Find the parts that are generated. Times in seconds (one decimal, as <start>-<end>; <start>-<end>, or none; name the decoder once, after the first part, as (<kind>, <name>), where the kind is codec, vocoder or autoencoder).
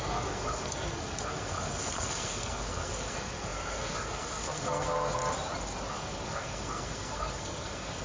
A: 0.0-5.2 (codec, SNAC); 5.9-8.0